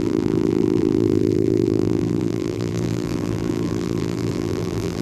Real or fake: fake